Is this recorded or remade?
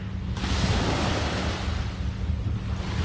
recorded